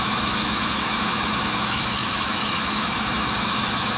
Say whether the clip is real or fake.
fake